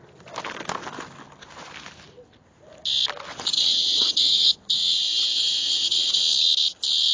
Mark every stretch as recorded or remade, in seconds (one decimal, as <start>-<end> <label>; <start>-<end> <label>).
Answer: 0.0-3.3 recorded; 3.3-6.2 remade; 6.2-7.1 recorded